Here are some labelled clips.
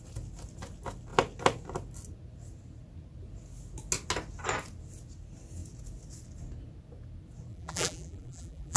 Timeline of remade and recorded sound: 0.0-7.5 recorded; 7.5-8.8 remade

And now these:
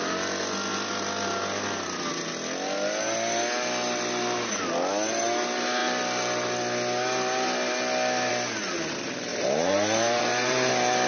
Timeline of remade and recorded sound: 0.0-9.3 recorded; 9.3-10.7 remade; 10.7-11.1 recorded